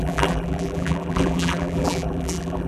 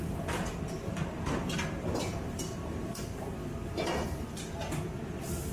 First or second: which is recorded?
second